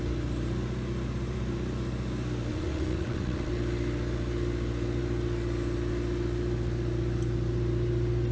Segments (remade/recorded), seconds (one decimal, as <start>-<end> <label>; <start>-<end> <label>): 0.0-2.5 recorded; 2.5-3.5 remade; 3.5-8.3 recorded